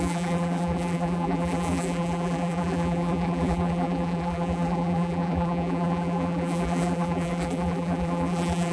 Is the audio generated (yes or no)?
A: yes